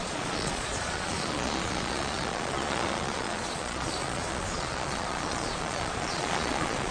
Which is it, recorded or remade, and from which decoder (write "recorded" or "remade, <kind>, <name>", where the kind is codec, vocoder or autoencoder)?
remade, vocoder, Vocos